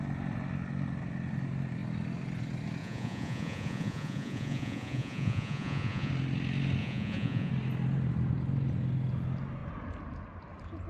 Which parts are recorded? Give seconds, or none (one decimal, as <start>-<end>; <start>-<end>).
0.0-2.8; 6.1-6.8; 7.5-10.9